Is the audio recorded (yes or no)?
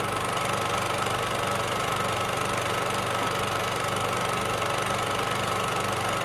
yes